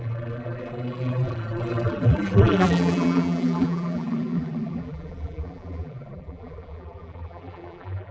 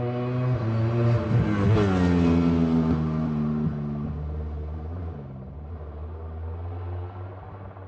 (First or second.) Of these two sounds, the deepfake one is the first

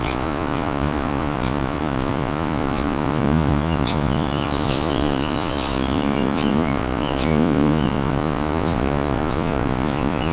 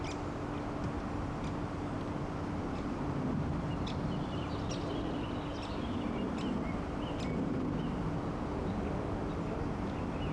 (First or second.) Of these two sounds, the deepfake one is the first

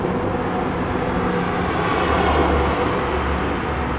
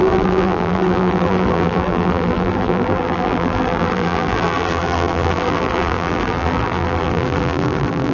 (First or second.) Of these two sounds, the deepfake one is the second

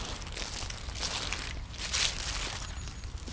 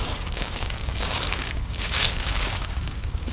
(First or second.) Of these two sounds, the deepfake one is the second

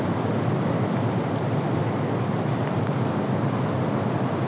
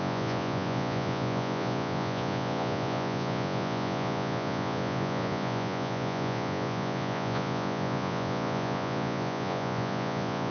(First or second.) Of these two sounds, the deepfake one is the second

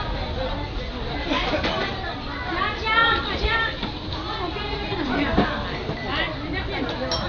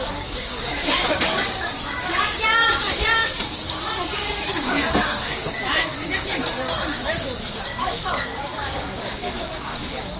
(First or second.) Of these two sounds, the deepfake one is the second